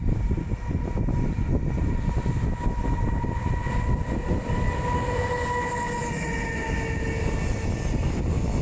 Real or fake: real